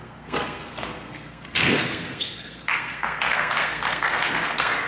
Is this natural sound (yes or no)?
no